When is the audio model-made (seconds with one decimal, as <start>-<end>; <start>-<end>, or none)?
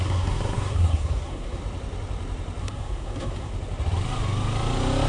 0.0-1.6; 2.6-3.5